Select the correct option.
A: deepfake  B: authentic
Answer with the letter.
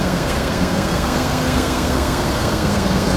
A